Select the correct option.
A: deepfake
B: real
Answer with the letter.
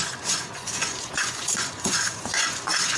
A